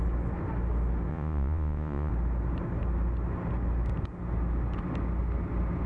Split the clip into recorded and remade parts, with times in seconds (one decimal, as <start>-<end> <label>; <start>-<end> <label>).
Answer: 0.0-1.1 recorded; 1.1-2.1 remade; 2.1-5.9 recorded